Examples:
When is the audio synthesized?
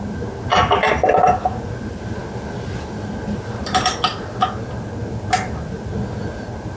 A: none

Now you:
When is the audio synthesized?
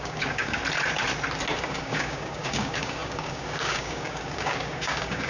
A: 0.0-0.6 (codec, DAC); 1.6-5.3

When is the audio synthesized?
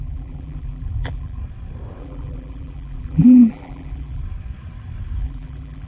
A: 0.0-1.4 (vocoder, BigVGAN v2); 2.0-4.2; 5.2-5.9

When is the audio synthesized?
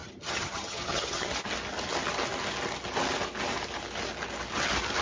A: 0.0-1.3 (vocoder, HiFi-GAN)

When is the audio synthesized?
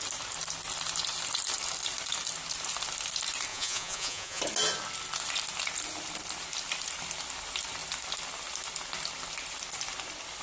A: 3.5-4.4 (vocoder, Vocos)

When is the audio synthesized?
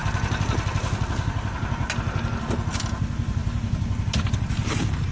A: none